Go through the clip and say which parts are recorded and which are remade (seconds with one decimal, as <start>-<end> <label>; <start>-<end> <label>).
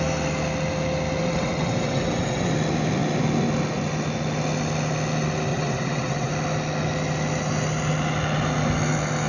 0.0-1.2 recorded; 1.2-2.5 remade; 2.5-5.5 recorded; 5.5-6.3 remade; 6.3-9.3 recorded